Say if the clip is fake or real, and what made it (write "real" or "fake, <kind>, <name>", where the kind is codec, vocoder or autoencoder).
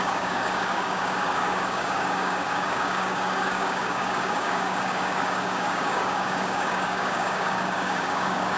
fake, codec, DAC